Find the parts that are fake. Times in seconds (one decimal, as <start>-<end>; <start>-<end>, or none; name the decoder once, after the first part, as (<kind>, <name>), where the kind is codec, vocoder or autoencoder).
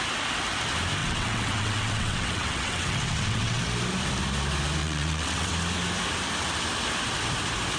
1.0-3.6 (vocoder, WaveNeXt); 4.8-5.5